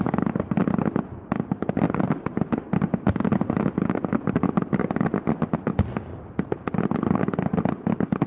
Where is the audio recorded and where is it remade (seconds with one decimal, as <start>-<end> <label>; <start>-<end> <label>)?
0.0-8.3 recorded